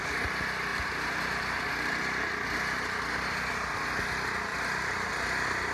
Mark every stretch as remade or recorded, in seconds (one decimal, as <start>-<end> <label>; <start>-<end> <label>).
0.0-0.7 recorded; 0.7-2.0 remade; 2.0-4.5 recorded; 4.5-5.1 remade; 5.1-5.7 recorded